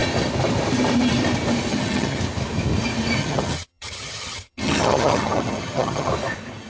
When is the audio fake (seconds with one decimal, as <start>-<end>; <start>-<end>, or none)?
1.7-2.2; 3.2-6.1